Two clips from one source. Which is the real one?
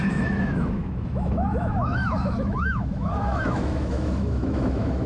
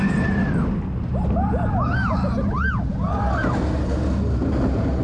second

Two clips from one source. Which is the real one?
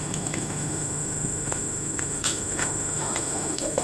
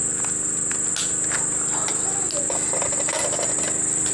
second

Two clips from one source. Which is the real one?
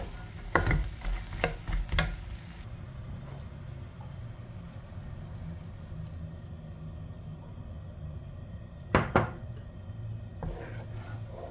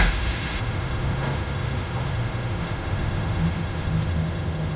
first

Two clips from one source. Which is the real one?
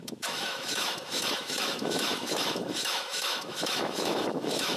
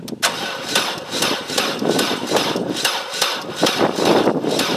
second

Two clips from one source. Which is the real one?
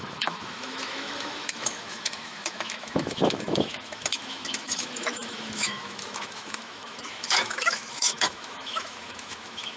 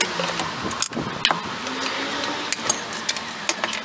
second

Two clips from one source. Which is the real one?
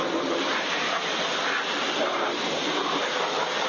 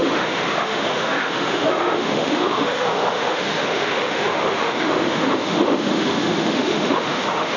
first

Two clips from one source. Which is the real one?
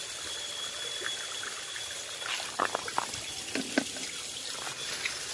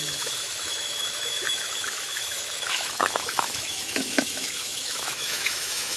first